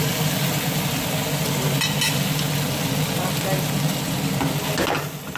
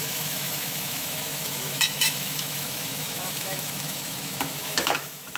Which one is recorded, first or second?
first